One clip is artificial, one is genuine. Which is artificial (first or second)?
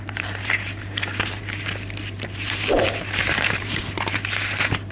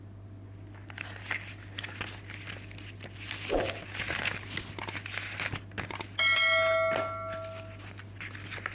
first